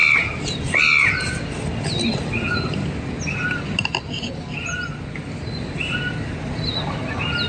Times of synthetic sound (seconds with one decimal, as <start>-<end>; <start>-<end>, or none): none